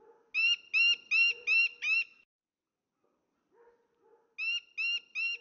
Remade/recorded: recorded